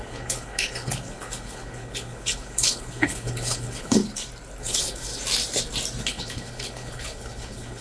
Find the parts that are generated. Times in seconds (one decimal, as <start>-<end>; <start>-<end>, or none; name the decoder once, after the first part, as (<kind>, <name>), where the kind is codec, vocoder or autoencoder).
0.0-4.0 (codec, HILCodec); 4.6-5.1; 6.0-7.8